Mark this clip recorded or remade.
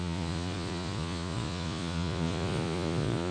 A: remade